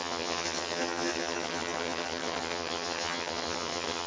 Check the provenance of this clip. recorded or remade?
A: remade